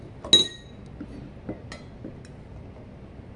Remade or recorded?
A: recorded